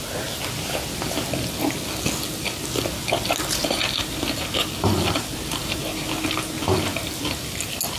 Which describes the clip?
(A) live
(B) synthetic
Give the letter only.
A